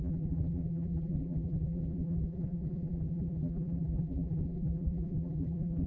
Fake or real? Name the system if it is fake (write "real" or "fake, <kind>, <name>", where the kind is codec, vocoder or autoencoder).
fake, vocoder, BigVGAN v2